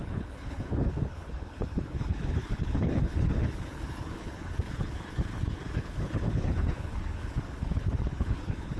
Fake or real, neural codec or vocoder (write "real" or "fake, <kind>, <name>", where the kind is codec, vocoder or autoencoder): fake, codec, HILCodec